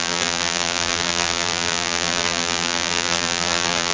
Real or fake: fake